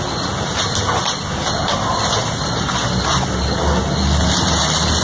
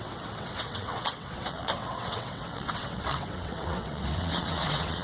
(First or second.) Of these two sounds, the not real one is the second